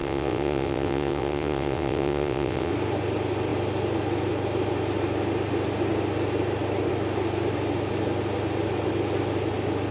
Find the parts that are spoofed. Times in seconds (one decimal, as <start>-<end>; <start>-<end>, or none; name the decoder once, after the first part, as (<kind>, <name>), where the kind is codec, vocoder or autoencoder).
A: 0.0-2.7 (vocoder, WaveNeXt)

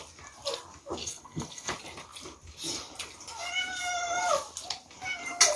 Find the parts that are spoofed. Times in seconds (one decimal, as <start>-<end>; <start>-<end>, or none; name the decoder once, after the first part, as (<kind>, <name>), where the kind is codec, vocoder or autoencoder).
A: 1.0-1.7 (codec, SNAC)